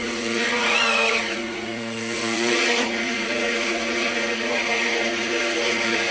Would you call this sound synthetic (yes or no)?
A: yes